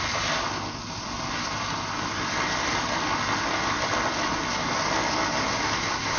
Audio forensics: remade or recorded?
recorded